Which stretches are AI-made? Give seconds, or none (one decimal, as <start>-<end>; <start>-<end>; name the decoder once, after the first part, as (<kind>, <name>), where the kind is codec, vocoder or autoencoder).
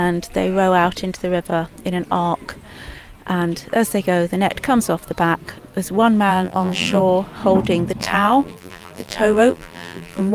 6.3-7.0 (vocoder, BigVGAN v2); 8.0-10.3